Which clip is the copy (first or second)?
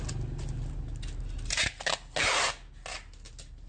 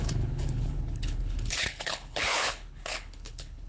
second